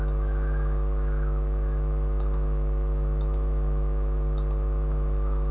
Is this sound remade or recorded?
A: remade